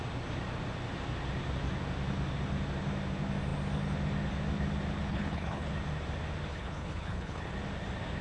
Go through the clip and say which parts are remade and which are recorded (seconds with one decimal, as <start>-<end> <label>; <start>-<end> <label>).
0.0-5.1 recorded; 5.1-5.7 remade; 5.7-6.5 recorded; 6.5-7.5 remade; 7.5-8.2 recorded

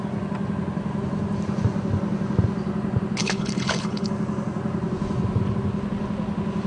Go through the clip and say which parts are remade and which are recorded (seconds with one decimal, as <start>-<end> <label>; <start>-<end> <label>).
0.0-3.2 recorded; 3.2-4.1 remade; 4.1-6.7 recorded

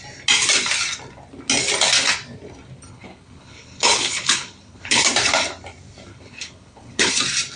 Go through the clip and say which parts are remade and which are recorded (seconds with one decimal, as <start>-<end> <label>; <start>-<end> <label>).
0.0-2.9 recorded; 2.9-5.0 remade; 5.0-6.1 recorded; 6.1-7.1 remade; 7.1-7.6 recorded

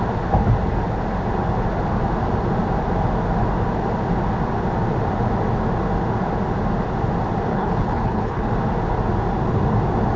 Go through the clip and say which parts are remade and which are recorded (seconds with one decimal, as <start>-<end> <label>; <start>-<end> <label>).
0.0-7.5 recorded; 7.5-8.5 remade; 8.5-10.2 recorded